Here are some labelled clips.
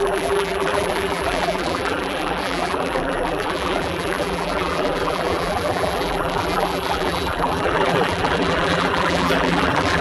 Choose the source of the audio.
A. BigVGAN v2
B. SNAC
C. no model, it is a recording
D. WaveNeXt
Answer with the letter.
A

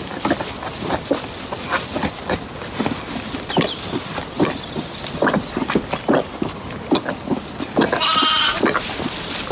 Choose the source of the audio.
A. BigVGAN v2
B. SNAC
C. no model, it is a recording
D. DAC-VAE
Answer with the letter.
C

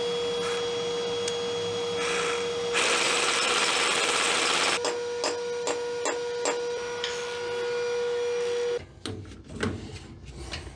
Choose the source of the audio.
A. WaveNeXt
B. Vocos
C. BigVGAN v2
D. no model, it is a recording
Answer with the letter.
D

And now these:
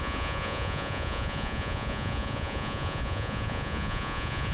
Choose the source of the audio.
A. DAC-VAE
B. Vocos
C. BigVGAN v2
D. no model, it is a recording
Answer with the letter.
B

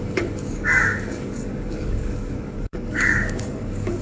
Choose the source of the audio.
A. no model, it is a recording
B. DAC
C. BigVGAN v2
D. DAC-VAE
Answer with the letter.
B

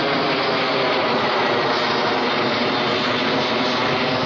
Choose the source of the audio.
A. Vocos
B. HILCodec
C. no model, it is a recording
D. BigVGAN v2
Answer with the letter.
C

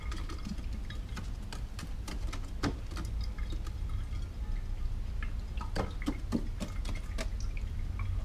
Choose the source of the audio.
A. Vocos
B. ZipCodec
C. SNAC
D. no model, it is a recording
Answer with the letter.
D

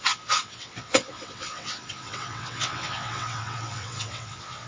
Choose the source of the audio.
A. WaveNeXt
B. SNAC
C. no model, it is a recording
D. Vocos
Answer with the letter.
A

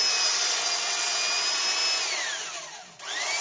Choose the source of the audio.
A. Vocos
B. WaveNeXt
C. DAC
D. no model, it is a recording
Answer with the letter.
D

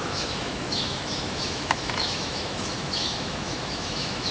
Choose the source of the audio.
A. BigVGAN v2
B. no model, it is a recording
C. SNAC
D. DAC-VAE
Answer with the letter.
D